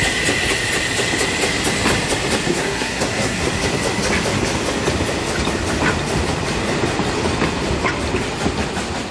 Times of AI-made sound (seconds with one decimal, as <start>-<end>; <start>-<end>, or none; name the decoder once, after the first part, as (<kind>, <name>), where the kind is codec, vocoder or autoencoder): 2.5-3.5 (codec, SNAC)